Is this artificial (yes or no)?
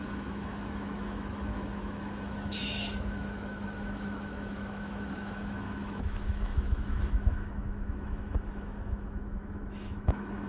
yes